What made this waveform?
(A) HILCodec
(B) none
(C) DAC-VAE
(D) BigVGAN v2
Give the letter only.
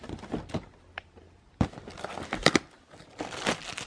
B